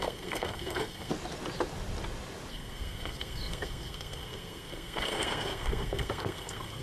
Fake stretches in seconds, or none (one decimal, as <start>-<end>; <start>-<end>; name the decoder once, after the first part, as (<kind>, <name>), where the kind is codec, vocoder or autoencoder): 0.0-1.1 (codec, SNAC); 2.5-6.8